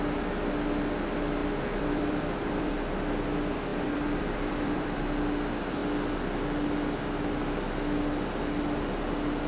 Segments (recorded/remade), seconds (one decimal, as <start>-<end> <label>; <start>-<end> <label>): 0.0-1.4 recorded; 1.4-2.7 remade; 2.7-3.7 recorded; 3.7-5.0 remade; 5.0-9.5 recorded